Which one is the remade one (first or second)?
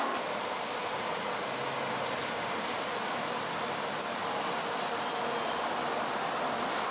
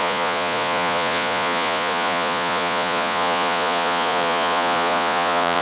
second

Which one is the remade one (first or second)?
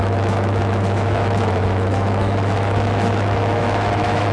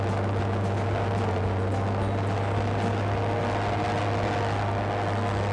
first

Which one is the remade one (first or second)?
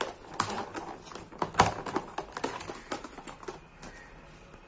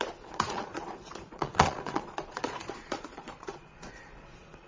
second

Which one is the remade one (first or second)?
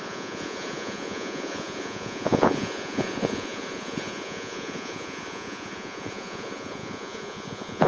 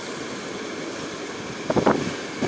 first